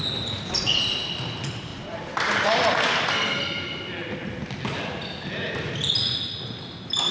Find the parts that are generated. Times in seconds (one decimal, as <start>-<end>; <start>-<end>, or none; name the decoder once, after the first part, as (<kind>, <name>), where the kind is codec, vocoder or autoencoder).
1.7-3.1 (vocoder, BigVGAN v2)